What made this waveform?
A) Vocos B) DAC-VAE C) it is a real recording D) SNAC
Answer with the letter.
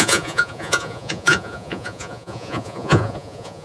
A